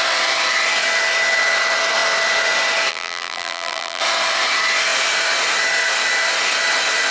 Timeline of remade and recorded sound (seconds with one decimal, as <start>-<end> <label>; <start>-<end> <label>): 0.0-2.9 recorded; 2.9-4.0 remade; 4.0-7.1 recorded